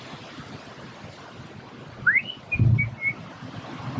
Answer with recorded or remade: recorded